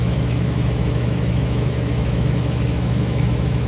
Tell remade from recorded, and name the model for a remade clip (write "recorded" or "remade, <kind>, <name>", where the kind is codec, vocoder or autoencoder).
remade, autoencoder, DAC-VAE